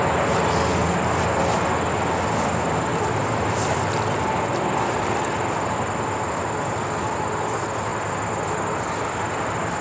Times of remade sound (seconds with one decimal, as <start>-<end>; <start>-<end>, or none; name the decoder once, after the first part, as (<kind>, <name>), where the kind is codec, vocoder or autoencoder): 2.9-3.9 (vocoder, BigVGAN v2)